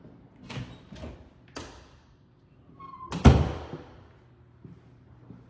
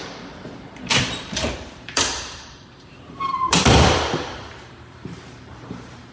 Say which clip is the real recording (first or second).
first